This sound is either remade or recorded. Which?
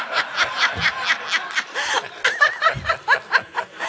recorded